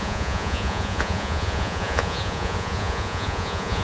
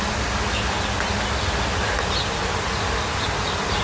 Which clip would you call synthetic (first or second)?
first